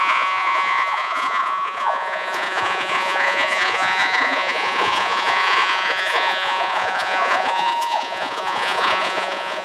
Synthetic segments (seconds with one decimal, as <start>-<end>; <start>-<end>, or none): 0.0-9.6

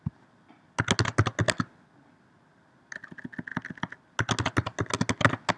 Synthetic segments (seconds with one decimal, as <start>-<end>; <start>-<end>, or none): none

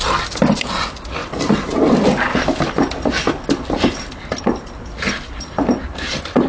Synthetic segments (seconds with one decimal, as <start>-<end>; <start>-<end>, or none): none

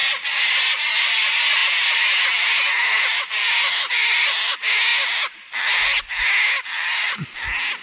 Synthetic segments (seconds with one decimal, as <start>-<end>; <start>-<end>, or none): none

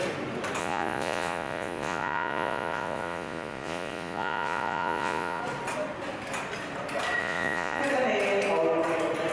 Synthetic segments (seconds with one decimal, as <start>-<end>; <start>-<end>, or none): 0.6-5.4; 7.2-7.8

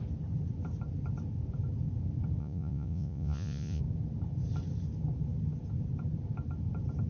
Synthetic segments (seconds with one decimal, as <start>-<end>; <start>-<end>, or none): 2.4-3.8

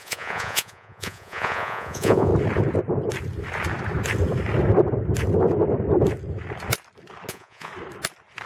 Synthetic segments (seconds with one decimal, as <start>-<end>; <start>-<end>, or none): 0.0-2.3; 7.3-7.7

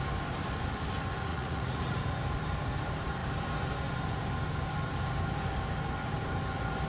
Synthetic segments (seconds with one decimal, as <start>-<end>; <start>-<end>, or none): 1.3-2.0